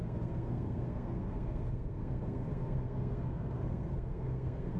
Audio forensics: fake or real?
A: fake